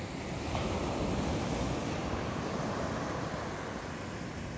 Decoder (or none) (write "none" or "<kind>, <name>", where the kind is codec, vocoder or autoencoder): none